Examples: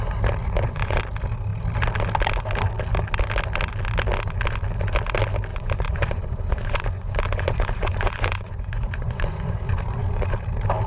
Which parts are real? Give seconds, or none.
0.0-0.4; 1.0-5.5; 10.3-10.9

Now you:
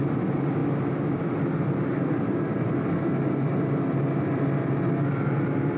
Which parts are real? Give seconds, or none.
0.0-5.8